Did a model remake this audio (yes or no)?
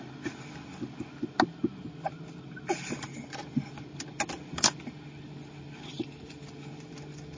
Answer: no